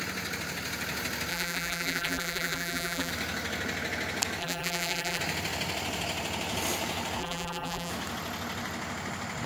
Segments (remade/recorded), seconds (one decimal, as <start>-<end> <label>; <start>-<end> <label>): 0.0-1.3 recorded; 1.3-3.1 remade; 3.1-4.4 recorded; 4.4-5.2 remade; 5.2-7.2 recorded; 7.2-7.9 remade; 7.9-9.5 recorded